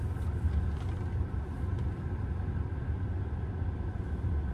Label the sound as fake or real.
real